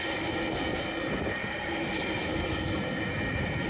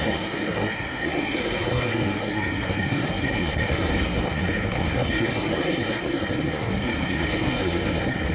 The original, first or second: first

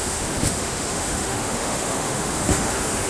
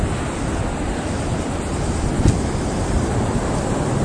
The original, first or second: second